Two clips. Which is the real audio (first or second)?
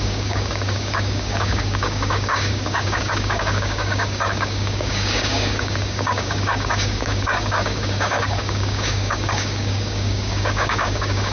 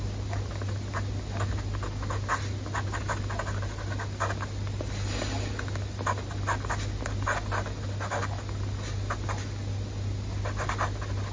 second